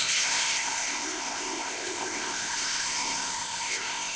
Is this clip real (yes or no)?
no